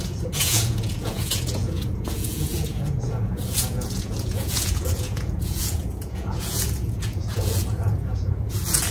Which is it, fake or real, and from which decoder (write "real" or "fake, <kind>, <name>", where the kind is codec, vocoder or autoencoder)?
fake, vocoder, Vocos